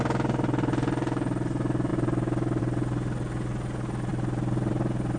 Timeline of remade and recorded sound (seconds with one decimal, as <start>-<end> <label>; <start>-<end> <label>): 0.0-5.2 recorded

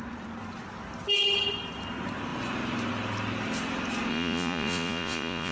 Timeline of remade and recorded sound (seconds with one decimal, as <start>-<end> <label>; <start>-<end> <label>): 0.0-4.1 recorded; 4.1-5.5 remade

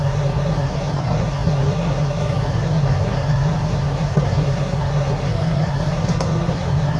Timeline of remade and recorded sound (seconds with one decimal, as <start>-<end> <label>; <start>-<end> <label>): 0.0-7.0 remade